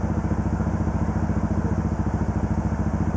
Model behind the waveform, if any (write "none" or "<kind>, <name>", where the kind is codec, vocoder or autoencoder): none